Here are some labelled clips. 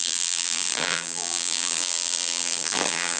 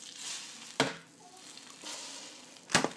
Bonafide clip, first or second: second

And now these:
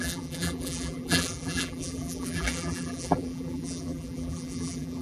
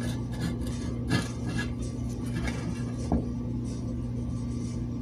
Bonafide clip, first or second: second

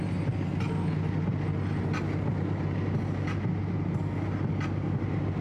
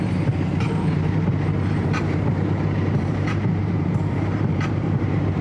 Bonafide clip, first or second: first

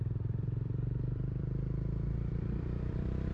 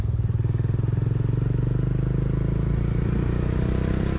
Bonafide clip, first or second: second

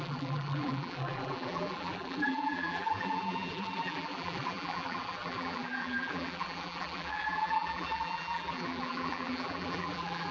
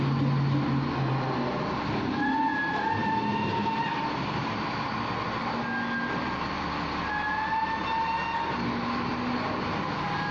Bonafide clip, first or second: second